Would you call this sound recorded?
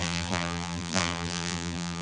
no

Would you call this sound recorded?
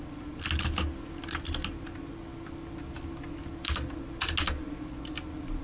yes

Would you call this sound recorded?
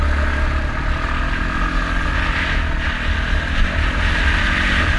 yes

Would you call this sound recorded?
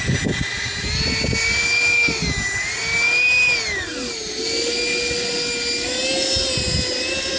yes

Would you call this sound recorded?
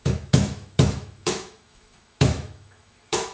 no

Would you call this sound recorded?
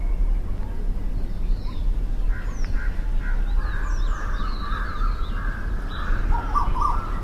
yes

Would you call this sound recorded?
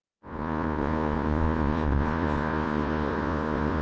no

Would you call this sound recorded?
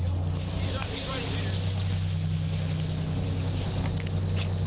yes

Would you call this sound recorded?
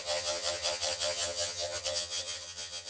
no